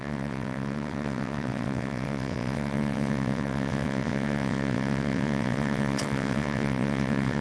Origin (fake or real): fake